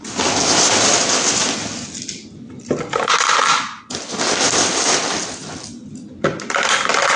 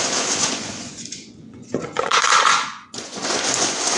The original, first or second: first